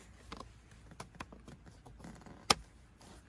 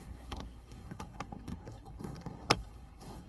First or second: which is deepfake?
second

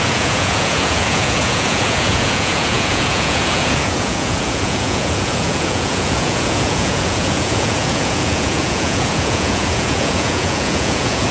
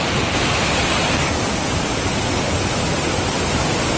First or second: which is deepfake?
first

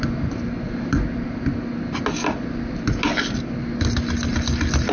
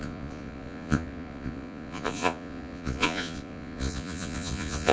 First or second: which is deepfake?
second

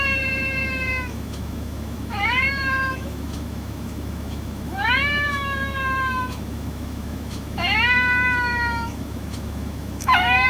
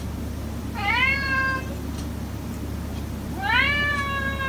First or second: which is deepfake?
first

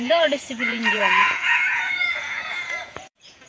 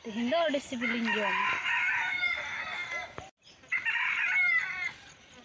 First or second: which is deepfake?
first